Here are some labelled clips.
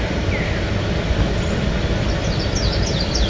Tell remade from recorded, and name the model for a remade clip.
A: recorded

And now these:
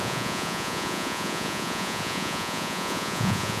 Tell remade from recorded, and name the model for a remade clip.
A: remade, vocoder, Vocos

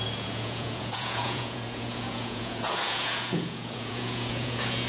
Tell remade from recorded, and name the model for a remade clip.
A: remade, vocoder, Vocos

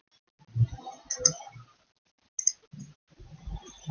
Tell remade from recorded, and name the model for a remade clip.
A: recorded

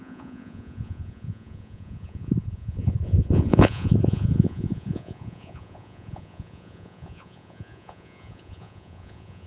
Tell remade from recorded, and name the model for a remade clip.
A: remade, vocoder, Vocos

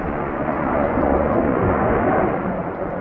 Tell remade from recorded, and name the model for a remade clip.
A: remade, vocoder, Vocos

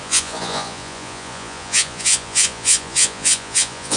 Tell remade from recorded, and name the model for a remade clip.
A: remade, vocoder, Vocos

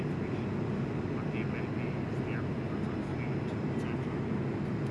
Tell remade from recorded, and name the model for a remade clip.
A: recorded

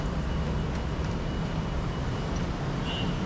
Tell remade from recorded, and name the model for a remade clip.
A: recorded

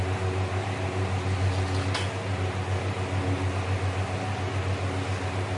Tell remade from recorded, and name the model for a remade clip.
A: recorded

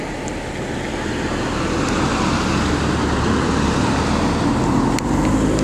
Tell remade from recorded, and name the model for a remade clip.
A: recorded